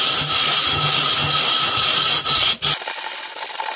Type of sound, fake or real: real